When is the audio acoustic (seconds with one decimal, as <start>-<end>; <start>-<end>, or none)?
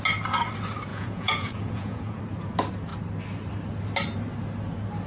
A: 0.0-0.9; 2.2-5.1